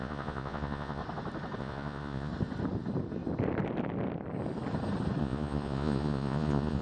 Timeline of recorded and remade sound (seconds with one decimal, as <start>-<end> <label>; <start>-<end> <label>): 0.0-1.0 remade; 1.0-1.6 recorded; 1.6-2.3 remade; 2.3-5.2 recorded; 5.2-6.8 remade